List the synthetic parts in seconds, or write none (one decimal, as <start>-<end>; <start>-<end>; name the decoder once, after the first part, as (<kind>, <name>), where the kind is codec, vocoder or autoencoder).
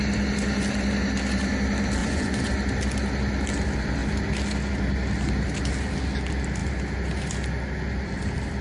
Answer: 2.0-2.5 (vocoder, Vocos)